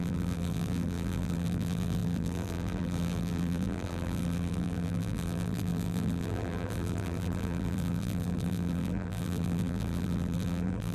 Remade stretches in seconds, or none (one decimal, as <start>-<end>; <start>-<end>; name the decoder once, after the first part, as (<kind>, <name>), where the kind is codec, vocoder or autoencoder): 0.0-10.9 (vocoder, BigVGAN v2)